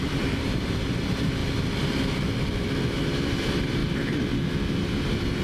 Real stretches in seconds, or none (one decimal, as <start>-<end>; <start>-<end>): 1.4-3.0; 3.8-4.9